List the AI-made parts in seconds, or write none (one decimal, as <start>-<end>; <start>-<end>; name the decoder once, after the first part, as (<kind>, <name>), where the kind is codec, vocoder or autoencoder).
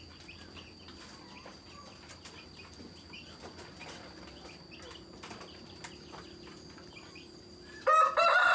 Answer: none